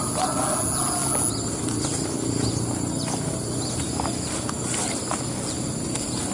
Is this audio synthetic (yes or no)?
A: no